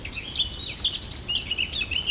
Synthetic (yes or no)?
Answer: no